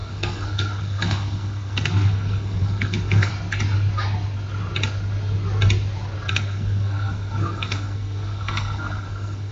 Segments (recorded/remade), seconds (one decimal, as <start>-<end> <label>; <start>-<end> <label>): 0.0-3.3 remade; 3.3-6.3 recorded; 6.3-9.5 remade